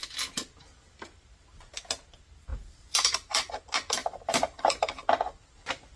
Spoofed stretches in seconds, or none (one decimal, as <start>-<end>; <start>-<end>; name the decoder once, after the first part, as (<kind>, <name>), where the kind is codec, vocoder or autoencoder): 2.5-3.5 (vocoder, BigVGAN v2); 4.0-5.0